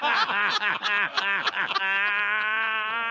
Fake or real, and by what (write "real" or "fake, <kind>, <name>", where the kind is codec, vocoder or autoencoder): real